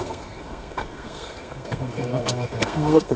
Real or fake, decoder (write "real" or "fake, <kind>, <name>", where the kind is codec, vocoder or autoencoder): fake, codec, SNAC